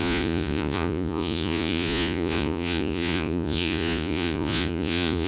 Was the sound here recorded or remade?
remade